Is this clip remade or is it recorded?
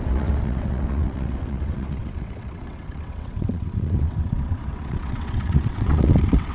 remade